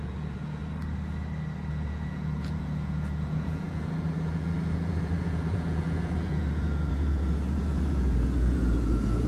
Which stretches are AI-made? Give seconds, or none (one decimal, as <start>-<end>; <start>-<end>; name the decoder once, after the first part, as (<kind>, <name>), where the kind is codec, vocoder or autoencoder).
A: 0.0-0.6 (vocoder, Vocos); 1.7-9.3